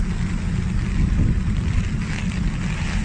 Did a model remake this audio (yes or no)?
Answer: no